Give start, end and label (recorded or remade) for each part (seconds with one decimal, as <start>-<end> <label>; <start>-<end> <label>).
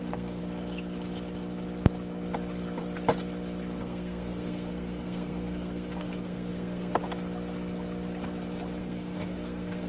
0.0-0.4 remade; 0.4-3.8 recorded; 3.8-7.0 remade; 7.0-8.8 recorded; 8.8-9.9 remade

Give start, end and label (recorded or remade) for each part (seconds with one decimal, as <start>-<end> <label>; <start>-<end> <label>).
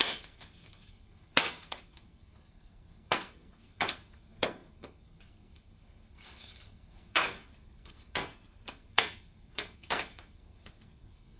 0.0-11.4 remade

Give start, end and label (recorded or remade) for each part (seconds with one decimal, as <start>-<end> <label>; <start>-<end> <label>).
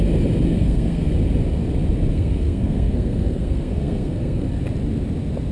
0.0-0.5 recorded; 0.5-1.1 remade; 1.1-2.1 recorded; 2.1-4.6 remade; 4.6-5.5 recorded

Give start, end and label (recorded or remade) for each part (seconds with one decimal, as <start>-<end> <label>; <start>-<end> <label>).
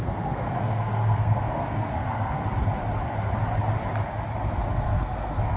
0.0-2.4 remade; 2.4-4.7 recorded; 4.7-5.6 remade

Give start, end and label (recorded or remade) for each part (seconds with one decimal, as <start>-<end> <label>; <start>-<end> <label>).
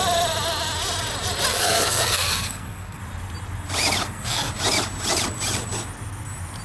0.0-1.5 recorded; 1.5-3.0 remade; 3.0-4.0 recorded; 4.0-4.5 remade; 4.5-6.6 recorded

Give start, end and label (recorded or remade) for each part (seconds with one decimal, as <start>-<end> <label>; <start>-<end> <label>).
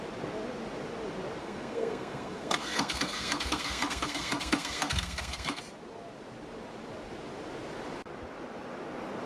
0.0-1.4 recorded; 1.4-5.6 remade; 5.6-9.3 recorded